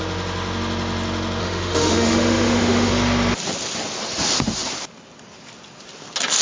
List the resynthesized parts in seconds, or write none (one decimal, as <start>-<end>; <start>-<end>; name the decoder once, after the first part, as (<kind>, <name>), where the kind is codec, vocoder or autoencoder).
1.4-2.9 (autoencoder, DAC-VAE)